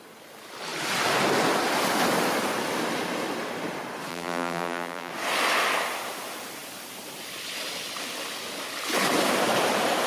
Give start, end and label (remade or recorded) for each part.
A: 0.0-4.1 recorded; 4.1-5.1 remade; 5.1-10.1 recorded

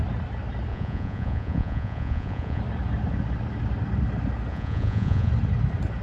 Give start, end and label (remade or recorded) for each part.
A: 0.0-0.7 recorded; 0.7-2.6 remade; 2.6-4.5 recorded; 4.5-5.3 remade; 5.3-6.0 recorded